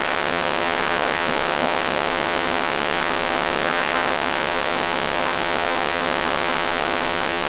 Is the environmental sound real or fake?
fake